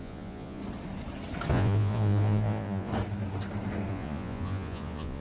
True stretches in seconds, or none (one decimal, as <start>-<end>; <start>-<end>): 0.6-1.5; 2.9-3.9